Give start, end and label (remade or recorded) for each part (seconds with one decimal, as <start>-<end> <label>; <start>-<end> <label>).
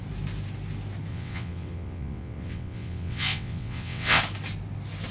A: 0.0-1.1 recorded; 1.1-4.2 remade; 4.2-5.1 recorded